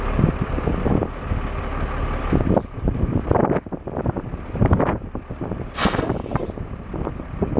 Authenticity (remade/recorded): remade